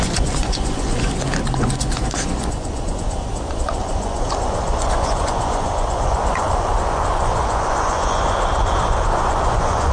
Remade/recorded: remade